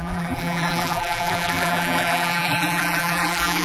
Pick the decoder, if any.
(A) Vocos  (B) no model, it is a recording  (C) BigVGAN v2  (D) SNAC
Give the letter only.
C